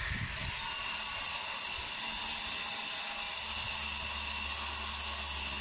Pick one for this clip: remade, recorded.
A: recorded